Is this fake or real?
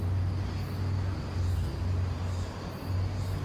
real